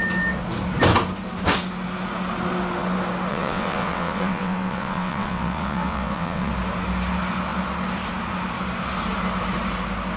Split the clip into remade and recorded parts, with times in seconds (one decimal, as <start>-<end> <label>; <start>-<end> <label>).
0.0-3.3 recorded; 3.3-6.5 remade; 6.5-10.2 recorded